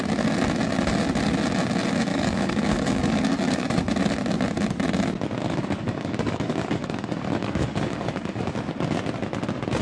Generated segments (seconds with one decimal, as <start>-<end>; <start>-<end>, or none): 2.1-3.8; 5.4-8.5